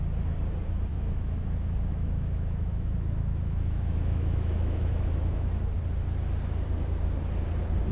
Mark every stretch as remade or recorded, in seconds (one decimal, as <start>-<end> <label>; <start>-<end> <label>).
0.0-0.9 recorded; 0.9-5.5 remade; 5.5-7.9 recorded

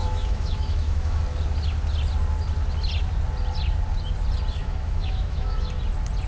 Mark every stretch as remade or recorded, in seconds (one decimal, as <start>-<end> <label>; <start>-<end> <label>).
0.0-1.2 remade; 1.2-4.6 recorded; 4.6-5.7 remade; 5.7-6.3 recorded

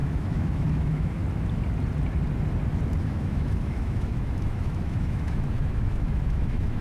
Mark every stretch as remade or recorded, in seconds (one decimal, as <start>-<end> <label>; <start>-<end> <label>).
0.0-1.2 remade; 1.2-3.0 recorded; 3.0-6.8 remade

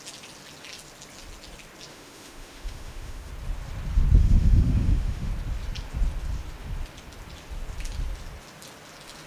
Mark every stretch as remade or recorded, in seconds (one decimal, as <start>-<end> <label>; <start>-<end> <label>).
0.0-1.9 recorded; 1.9-3.3 remade; 3.3-4.2 recorded; 4.2-5.3 remade; 5.3-9.3 recorded

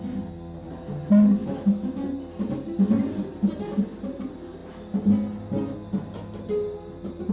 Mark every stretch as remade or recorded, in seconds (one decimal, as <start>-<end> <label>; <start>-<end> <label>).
0.0-1.4 recorded; 1.4-2.0 remade; 2.0-7.3 recorded

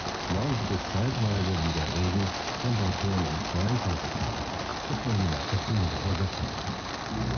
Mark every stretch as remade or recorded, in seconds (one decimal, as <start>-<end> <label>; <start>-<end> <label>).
0.0-7.4 recorded